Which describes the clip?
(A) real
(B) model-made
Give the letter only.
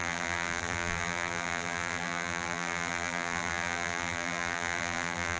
B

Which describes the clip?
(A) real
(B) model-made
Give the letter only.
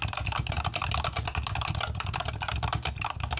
A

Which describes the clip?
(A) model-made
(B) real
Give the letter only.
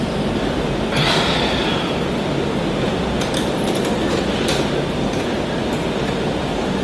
B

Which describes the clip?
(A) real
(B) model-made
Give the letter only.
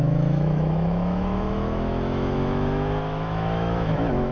B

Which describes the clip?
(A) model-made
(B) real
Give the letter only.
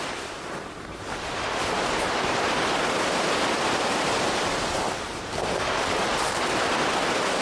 A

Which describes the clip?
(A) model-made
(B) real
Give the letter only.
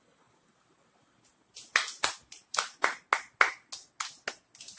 B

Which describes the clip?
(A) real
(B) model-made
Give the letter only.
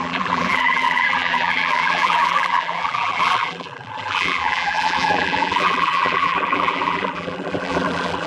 B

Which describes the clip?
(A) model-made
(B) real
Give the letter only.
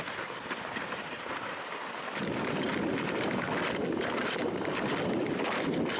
B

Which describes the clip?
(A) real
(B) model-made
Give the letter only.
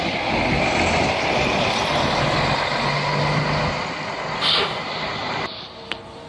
A